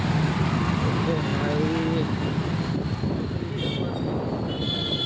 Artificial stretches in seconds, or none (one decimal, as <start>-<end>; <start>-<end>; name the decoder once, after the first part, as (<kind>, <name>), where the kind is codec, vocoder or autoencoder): none